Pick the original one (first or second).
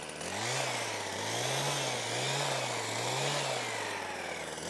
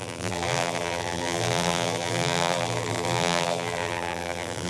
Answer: first